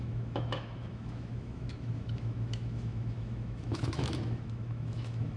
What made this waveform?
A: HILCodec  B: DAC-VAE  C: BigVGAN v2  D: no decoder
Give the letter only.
B